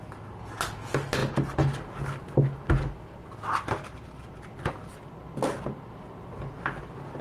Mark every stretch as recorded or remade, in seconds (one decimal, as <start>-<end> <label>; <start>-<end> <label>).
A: 0.0-7.2 recorded

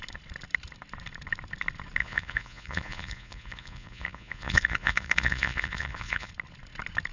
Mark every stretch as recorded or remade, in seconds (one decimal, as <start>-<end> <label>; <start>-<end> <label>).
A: 0.0-2.0 recorded; 2.0-6.3 remade; 6.3-7.1 recorded

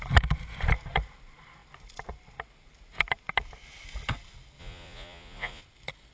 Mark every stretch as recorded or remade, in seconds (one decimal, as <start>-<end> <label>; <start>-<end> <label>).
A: 0.0-4.6 recorded; 4.6-5.6 remade; 5.6-6.1 recorded

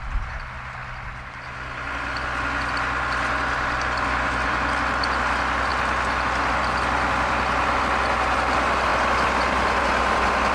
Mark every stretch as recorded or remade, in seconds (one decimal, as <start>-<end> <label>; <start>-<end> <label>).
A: 0.0-10.5 recorded

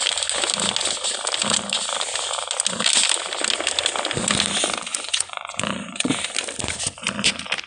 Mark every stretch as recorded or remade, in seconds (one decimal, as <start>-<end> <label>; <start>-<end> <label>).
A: 0.0-4.9 recorded; 4.9-6.1 remade; 6.1-7.7 recorded

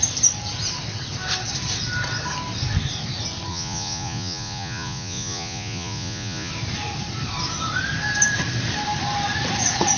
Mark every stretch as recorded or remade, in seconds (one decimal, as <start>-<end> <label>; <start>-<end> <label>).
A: 0.0-3.5 recorded; 3.5-6.5 remade; 6.5-10.0 recorded

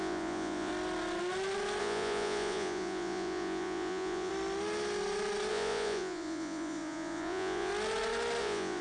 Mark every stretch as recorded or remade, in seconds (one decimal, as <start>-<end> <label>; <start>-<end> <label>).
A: 0.0-0.7 remade; 0.7-1.8 recorded; 1.8-4.3 remade; 4.3-5.5 recorded; 5.5-7.7 remade; 7.7-8.4 recorded; 8.4-8.8 remade